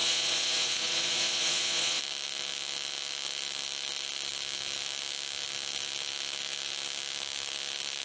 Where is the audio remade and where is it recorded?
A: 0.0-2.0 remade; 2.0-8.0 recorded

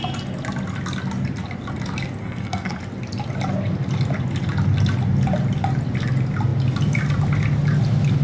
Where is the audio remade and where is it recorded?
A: 0.0-2.2 recorded; 2.2-2.8 remade; 2.8-8.2 recorded